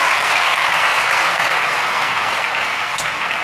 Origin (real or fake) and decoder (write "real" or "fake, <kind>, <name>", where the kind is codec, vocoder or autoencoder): fake, codec, SNAC